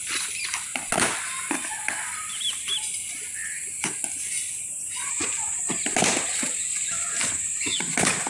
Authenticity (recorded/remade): recorded